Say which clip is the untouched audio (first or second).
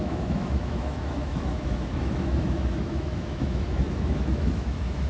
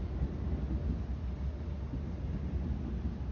second